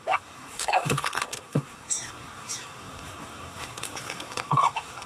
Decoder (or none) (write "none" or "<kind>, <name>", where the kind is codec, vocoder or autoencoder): codec, SNAC